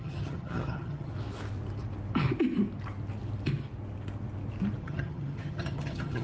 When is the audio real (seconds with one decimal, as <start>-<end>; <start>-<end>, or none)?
1.1-4.8